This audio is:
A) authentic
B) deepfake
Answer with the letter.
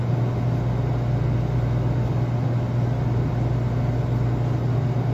A